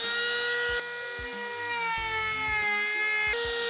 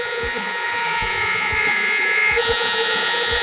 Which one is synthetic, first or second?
second